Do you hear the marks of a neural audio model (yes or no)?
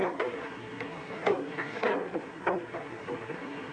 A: yes